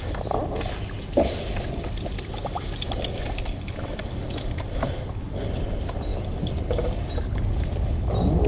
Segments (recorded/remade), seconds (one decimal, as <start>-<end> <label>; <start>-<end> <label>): 0.0-8.5 recorded